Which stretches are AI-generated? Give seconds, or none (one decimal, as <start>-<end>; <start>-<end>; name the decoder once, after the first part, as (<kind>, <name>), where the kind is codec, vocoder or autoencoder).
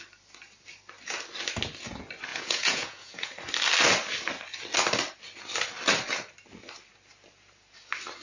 2.3-3.3 (vocoder, Vocos)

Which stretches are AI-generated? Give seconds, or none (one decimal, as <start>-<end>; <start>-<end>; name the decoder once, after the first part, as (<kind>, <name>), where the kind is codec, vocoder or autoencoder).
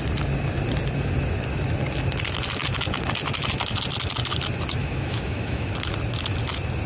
4.8-5.7 (autoencoder, DAC-VAE)